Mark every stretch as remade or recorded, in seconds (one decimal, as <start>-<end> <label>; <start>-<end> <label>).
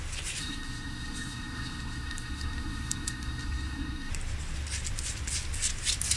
0.0-0.4 recorded; 0.4-4.1 remade; 4.1-6.2 recorded